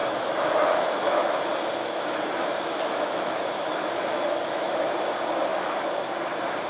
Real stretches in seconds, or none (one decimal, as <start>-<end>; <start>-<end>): 1.4-1.8; 4.7-5.5; 6.1-6.7